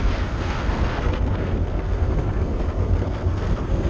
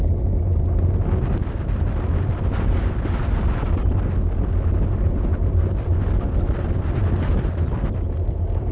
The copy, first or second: first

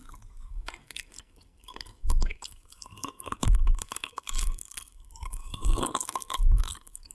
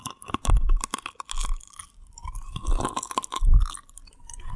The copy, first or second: first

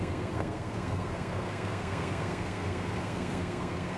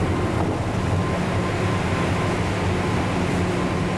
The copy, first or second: first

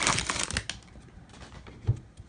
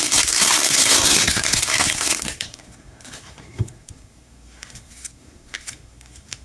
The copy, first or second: second